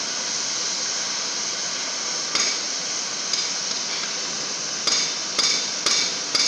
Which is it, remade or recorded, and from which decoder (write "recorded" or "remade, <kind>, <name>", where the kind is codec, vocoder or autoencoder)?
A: recorded